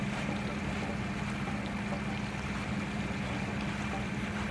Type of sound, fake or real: real